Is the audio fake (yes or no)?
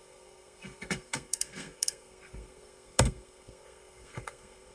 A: yes